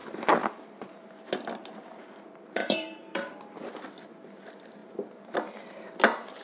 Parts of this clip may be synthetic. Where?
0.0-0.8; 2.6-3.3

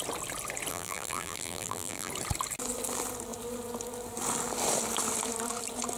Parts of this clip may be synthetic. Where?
0.7-2.1

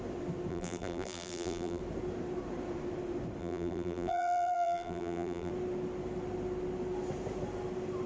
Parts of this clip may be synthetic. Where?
0.5-1.8; 3.4-5.5

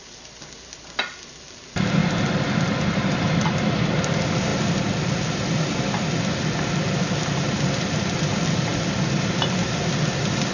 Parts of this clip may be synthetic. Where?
0.0-2.0; 3.0-4.5; 5.2-8.7; 9.7-10.5

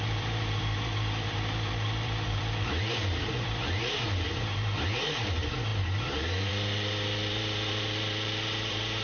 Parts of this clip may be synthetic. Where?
0.0-9.0